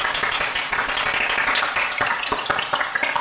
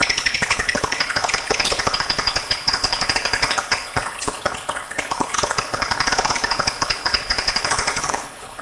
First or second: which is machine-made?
second